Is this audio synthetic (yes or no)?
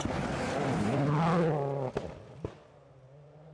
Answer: no